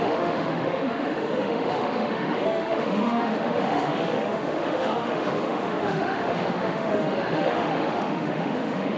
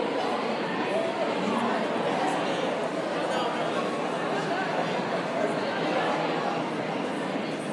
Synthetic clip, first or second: first